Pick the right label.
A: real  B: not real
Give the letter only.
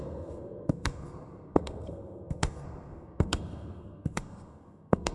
B